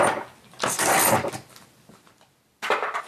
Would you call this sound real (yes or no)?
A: yes